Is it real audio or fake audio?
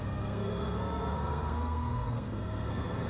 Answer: fake